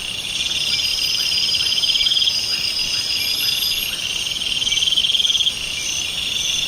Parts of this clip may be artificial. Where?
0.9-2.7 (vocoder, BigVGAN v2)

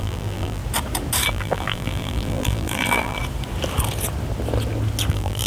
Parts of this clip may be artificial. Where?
0.0-0.6 (vocoder, BigVGAN v2); 1.3-3.2; 5.1-5.5